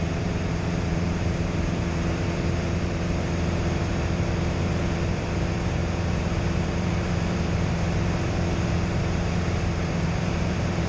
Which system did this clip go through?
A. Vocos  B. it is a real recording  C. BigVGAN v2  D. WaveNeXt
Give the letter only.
C